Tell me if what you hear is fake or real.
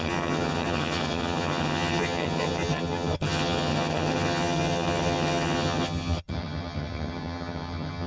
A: fake